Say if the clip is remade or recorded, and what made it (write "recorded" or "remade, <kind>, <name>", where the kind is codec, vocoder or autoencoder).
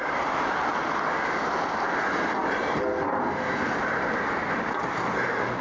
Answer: recorded